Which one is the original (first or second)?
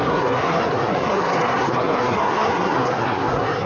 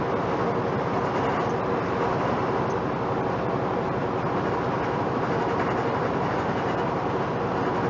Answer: second